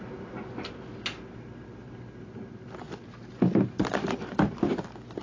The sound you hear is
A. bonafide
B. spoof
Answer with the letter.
A